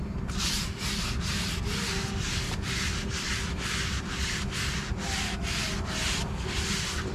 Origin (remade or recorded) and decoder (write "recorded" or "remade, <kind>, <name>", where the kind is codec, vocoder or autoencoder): recorded